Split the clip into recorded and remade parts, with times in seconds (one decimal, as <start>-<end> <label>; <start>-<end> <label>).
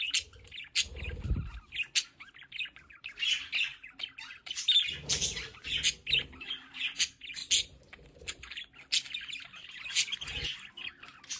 0.0-3.7 recorded; 3.7-4.6 remade; 4.6-11.4 recorded